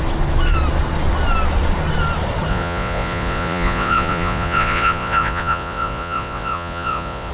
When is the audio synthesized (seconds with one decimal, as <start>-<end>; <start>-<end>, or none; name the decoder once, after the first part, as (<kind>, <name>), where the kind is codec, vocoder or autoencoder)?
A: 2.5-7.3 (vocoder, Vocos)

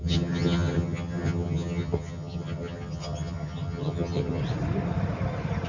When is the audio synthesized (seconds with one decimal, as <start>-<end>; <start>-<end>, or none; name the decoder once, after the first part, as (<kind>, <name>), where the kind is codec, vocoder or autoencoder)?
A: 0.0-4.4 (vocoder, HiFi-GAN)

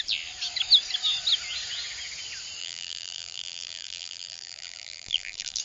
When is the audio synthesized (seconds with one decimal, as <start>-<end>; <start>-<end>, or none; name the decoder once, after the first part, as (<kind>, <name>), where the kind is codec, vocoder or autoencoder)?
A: 2.6-5.6 (vocoder, BigVGAN v2)

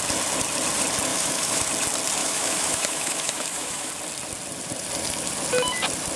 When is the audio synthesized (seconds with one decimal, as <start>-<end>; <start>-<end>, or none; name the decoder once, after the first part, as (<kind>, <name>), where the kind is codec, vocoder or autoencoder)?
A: 1.1-1.7 (autoencoder, DAC-VAE); 2.2-3.9